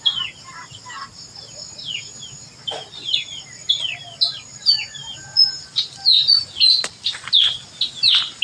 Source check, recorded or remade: recorded